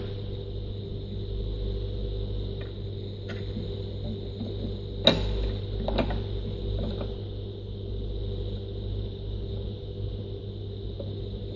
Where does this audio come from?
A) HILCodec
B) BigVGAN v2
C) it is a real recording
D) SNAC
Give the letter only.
C